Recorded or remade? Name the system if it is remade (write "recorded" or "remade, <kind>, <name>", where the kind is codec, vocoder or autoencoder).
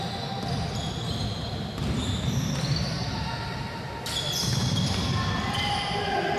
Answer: recorded